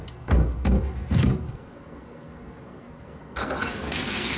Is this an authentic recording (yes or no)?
no